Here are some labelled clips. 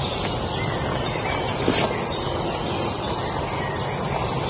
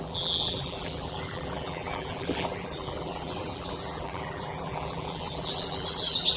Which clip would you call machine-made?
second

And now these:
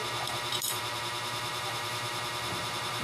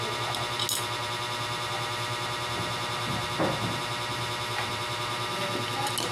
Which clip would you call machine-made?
first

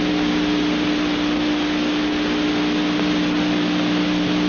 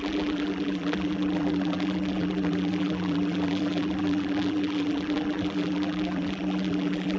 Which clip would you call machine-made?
second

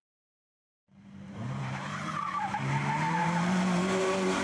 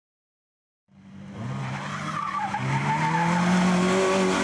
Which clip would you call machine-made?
first